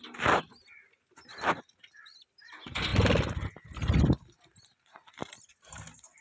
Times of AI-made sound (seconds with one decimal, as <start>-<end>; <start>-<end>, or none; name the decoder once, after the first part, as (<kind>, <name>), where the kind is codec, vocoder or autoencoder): none